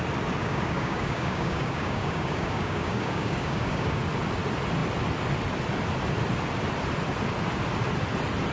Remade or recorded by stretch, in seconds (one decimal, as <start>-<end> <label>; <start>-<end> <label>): 0.0-0.4 recorded; 0.4-4.0 remade; 4.0-8.5 recorded